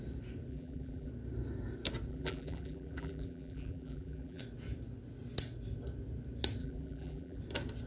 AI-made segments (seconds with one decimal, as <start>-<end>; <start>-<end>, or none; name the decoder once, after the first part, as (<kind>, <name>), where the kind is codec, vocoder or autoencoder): 0.5-1.1 (vocoder, BigVGAN v2); 2.1-4.4; 6.6-7.4